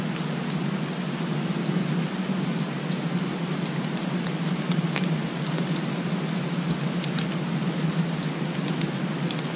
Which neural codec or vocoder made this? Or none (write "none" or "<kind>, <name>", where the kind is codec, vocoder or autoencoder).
none